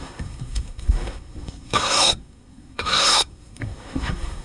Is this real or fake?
fake